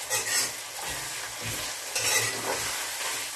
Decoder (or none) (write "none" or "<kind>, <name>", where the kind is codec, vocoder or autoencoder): none